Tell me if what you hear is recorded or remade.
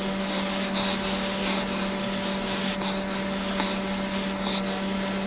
recorded